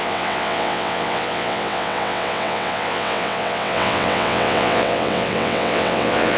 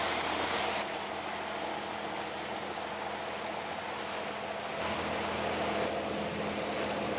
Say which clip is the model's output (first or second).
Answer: first